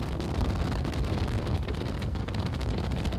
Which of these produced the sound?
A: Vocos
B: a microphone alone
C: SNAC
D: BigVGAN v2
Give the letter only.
C